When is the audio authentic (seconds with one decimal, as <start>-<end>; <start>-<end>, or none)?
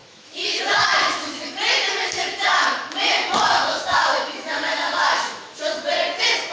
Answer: 1.6-2.0; 5.9-6.5